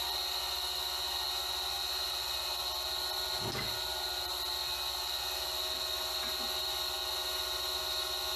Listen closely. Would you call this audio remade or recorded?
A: recorded